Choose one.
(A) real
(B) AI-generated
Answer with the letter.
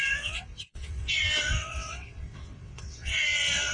B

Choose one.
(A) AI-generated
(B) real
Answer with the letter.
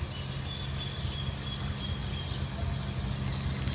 B